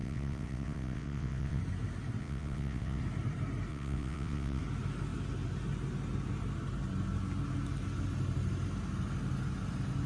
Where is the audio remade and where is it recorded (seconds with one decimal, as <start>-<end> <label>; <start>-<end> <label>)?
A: 0.0-1.6 remade; 1.6-2.2 recorded; 2.2-3.0 remade; 3.0-3.7 recorded; 3.7-4.6 remade; 4.6-10.1 recorded